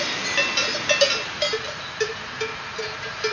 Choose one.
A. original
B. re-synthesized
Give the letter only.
B